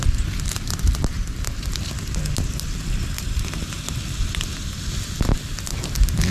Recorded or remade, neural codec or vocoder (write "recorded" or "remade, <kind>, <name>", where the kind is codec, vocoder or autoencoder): recorded